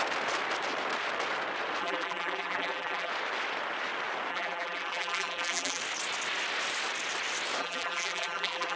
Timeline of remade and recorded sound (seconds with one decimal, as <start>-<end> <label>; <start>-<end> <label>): 0.0-1.8 recorded; 1.8-3.1 remade; 3.1-4.3 recorded; 4.3-5.8 remade; 5.8-7.6 recorded; 7.6-8.8 remade